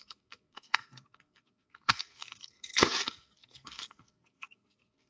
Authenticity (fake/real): fake